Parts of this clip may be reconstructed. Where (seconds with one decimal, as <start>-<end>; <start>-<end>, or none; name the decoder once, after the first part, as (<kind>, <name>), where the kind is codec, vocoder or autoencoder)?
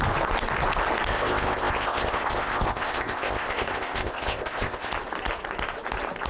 1.1-4.9 (codec, ZipCodec)